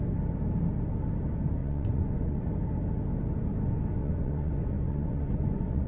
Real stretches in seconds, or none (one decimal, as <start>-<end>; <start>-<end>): 0.0-1.6; 2.5-4.0